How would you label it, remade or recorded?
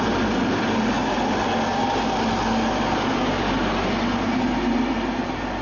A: recorded